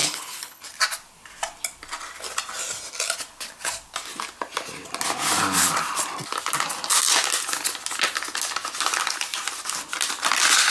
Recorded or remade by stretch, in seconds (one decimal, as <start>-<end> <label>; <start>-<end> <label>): 0.0-0.6 remade; 0.6-10.7 recorded